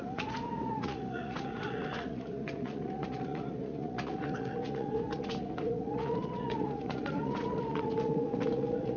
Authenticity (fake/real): fake